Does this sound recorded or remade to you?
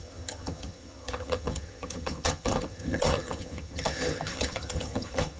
remade